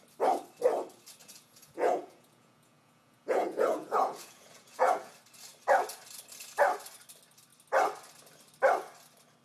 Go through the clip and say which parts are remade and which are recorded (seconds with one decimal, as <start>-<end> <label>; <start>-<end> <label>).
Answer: 0.0-1.2 recorded; 1.2-5.1 remade; 5.1-9.4 recorded